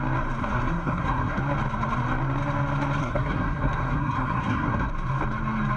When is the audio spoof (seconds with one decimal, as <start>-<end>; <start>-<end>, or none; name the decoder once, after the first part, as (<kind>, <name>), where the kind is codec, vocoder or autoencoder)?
0.4-1.4 (codec, SNAC); 3.0-4.9